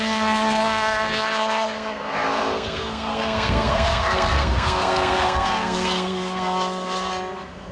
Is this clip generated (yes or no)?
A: yes